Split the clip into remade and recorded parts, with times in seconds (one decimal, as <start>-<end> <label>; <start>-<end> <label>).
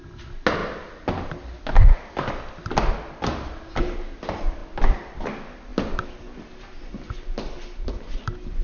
0.0-8.6 recorded